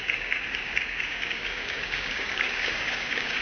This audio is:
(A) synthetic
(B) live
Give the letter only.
A